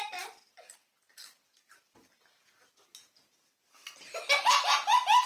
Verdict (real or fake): real